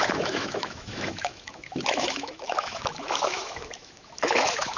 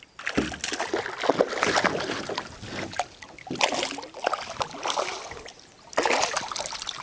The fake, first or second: first